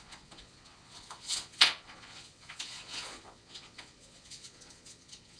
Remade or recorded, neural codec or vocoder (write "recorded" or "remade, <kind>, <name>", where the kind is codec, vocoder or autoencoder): remade, vocoder, Vocos